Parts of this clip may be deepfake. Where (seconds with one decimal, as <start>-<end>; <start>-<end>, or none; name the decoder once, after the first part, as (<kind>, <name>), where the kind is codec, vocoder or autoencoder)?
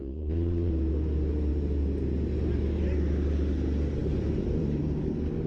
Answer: 0.0-0.7 (vocoder, Vocos)